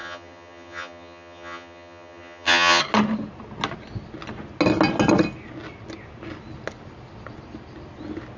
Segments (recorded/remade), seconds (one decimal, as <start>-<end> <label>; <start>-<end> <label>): 0.0-2.8 remade; 2.8-8.4 recorded